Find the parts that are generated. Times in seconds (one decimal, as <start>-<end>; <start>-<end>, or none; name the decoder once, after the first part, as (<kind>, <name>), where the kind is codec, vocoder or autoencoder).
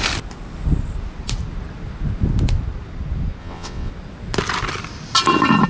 3.4-3.9 (vocoder, WaveNeXt)